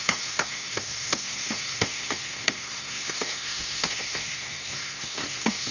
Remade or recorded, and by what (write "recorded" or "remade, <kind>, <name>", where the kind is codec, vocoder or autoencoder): remade, codec, SNAC